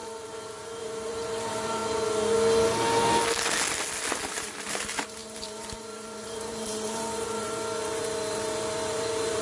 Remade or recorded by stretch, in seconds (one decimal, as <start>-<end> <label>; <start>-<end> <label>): 0.0-1.8 remade; 1.8-4.3 recorded; 4.3-9.4 remade

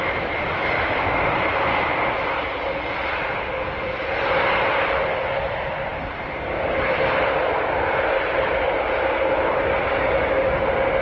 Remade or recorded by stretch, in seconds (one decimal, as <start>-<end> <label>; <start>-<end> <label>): 0.0-11.0 recorded